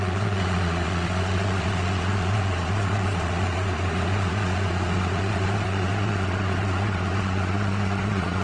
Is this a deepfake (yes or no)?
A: yes